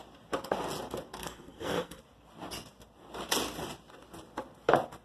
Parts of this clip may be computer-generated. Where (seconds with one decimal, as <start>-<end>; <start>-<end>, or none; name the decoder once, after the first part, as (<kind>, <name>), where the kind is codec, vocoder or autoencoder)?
1.2-2.0 (codec, SNAC)